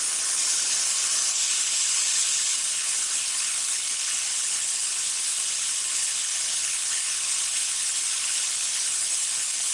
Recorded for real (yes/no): no